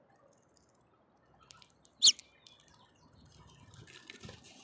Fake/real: real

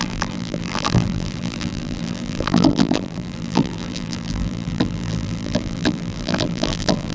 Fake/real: fake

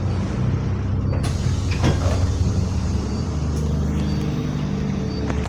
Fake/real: real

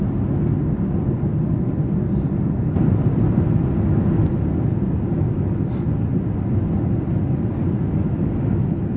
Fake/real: real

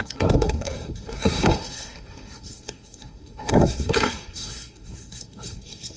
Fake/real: fake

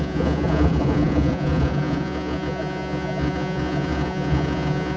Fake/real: fake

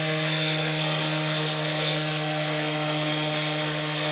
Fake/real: fake